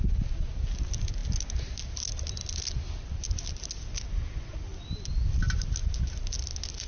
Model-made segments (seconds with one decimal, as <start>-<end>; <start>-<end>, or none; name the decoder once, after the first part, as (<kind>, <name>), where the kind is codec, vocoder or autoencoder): none